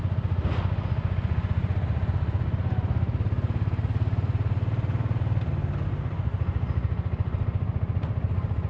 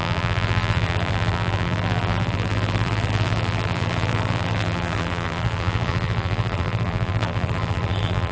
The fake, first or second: second